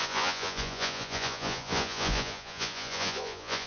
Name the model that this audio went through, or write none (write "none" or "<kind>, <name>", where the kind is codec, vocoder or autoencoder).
vocoder, Vocos